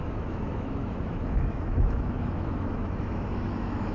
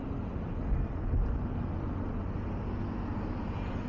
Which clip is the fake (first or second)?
first